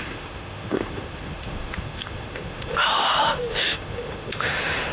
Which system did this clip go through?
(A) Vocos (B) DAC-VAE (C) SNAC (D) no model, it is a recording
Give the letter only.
B